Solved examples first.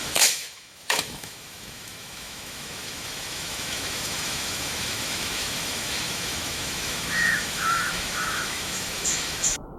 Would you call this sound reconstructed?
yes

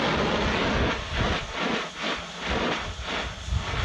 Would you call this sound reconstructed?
no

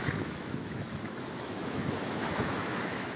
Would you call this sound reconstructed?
yes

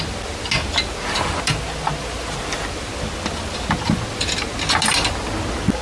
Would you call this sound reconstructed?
no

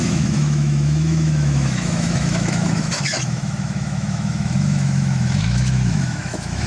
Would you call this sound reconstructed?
yes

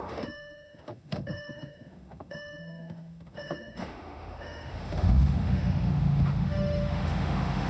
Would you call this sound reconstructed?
yes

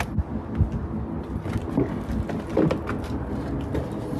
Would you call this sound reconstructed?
no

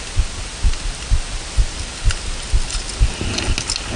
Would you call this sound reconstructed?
no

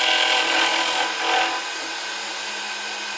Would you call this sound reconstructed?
no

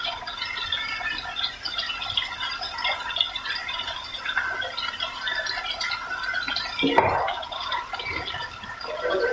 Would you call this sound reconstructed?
no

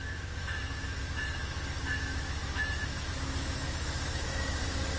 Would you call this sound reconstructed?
yes